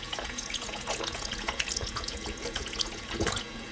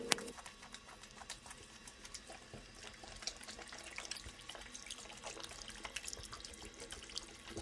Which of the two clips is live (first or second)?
second